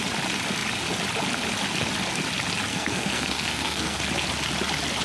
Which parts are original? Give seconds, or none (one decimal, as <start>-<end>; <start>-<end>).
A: 0.0-2.7; 4.0-5.0